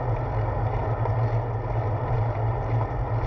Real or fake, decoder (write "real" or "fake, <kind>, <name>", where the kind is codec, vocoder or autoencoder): real